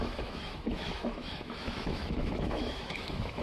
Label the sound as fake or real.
fake